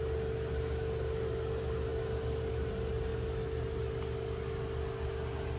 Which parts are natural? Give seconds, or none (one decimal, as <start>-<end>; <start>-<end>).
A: 0.0-5.6